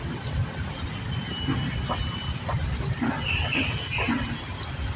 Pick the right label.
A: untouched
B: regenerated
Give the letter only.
A